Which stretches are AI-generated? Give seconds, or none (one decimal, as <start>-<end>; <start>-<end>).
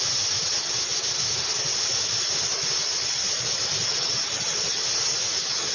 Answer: none